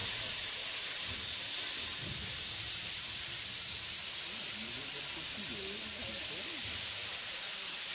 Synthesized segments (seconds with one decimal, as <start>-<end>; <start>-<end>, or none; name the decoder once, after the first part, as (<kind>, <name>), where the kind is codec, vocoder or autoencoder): none